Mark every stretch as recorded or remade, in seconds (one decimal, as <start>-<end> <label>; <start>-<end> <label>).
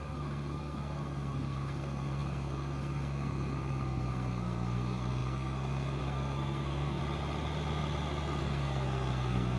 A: 0.0-7.0 remade; 7.0-8.4 recorded; 8.4-9.6 remade